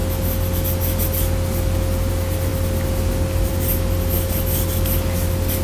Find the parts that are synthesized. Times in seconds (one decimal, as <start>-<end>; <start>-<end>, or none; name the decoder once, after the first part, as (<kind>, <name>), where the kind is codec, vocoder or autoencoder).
none